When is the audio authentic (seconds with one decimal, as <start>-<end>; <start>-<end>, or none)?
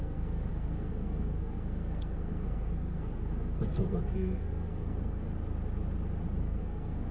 5.3-6.4